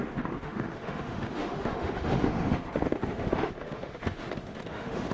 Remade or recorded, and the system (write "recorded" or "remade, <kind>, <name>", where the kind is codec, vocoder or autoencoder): remade, autoencoder, DAC-VAE